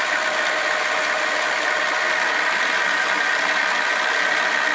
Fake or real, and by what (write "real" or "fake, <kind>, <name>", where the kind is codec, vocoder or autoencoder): real